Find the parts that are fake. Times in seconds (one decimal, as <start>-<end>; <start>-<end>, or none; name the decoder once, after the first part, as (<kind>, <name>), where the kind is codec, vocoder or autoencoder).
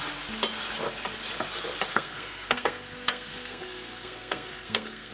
1.9-5.1 (codec, SNAC)